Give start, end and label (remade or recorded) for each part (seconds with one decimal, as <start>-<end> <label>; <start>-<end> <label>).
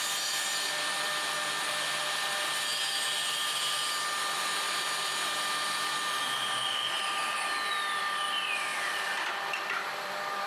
0.0-1.1 remade; 1.1-6.2 recorded; 6.2-7.2 remade; 7.2-8.0 recorded; 8.0-10.5 remade